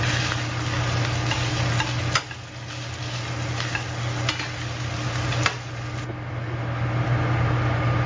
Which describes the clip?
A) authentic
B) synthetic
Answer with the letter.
A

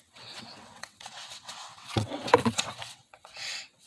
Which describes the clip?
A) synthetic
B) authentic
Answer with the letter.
A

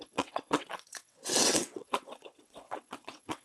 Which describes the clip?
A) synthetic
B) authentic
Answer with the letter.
A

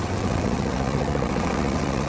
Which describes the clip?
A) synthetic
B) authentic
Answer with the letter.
A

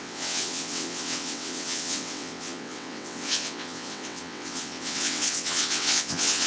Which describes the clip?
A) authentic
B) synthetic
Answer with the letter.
B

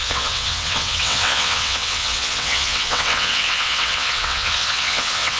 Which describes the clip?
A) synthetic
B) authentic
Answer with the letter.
A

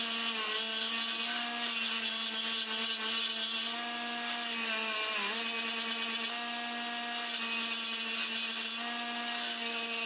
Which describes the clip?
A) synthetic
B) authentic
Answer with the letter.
B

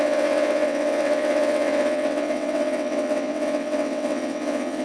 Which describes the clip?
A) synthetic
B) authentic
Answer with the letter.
A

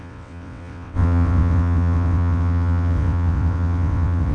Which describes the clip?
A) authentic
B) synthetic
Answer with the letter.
B